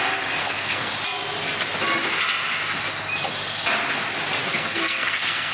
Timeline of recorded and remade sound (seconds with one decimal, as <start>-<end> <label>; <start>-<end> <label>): 0.0-0.4 recorded; 0.4-0.9 remade; 0.9-4.4 recorded; 4.4-5.5 remade